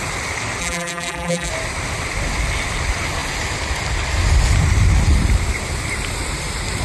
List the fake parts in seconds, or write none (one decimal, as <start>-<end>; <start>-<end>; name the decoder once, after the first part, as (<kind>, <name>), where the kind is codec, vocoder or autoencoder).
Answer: 0.6-1.5 (vocoder, BigVGAN v2)